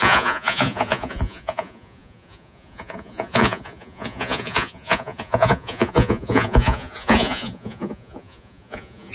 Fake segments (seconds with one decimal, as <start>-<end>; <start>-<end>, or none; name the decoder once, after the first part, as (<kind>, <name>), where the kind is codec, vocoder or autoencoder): 0.0-9.1 (vocoder, Vocos)